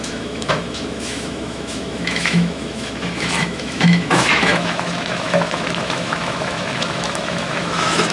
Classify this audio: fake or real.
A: fake